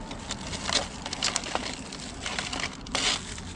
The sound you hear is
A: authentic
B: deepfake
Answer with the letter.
A